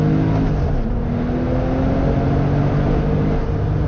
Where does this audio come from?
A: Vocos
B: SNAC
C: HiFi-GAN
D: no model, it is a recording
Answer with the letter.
D